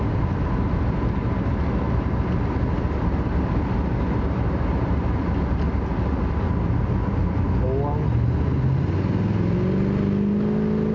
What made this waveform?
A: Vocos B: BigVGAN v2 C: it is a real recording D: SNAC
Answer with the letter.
C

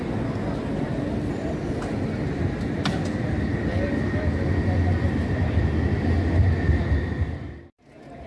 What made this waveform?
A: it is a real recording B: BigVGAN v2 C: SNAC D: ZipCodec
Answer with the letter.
A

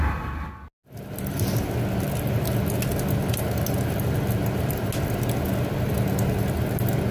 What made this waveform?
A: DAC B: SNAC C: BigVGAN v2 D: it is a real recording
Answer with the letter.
D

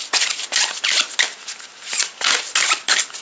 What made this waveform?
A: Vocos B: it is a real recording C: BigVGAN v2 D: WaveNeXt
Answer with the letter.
B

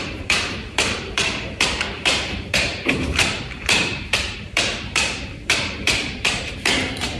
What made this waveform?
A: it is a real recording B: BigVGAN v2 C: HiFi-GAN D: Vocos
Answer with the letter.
B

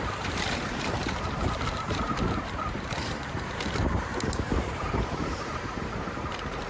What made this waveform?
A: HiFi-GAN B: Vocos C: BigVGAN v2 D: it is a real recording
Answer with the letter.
C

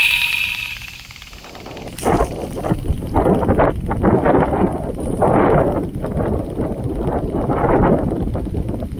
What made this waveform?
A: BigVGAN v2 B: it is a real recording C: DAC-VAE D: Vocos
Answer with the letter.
B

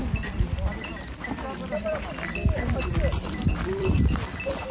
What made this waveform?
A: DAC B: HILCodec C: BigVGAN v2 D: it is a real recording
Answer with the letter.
C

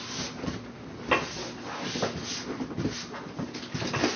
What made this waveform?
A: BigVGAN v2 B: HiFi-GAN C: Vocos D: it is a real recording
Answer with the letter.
D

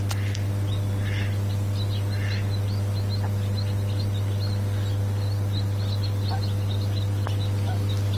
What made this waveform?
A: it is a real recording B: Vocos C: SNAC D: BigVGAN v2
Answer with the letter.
A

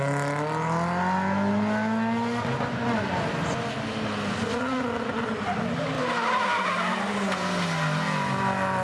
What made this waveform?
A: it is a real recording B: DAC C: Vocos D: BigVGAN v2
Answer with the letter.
A